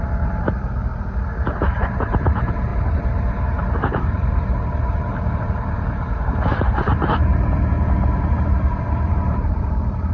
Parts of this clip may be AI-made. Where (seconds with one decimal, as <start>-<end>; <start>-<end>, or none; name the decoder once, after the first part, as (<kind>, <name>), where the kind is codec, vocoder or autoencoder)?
0.0-0.9 (vocoder, BigVGAN v2); 1.7-6.9; 8.3-10.1